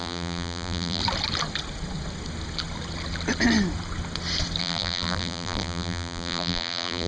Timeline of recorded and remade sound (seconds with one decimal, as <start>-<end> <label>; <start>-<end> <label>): 0.0-1.0 remade; 1.0-4.6 recorded; 4.6-7.1 remade